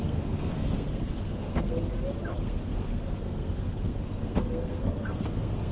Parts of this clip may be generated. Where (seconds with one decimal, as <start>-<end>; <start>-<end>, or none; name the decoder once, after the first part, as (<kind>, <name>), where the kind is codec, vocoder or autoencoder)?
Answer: 0.0-1.9 (codec, SNAC); 2.3-5.7